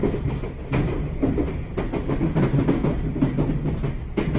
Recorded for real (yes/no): yes